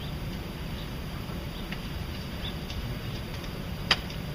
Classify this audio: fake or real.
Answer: fake